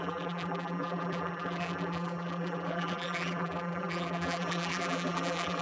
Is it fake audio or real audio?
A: fake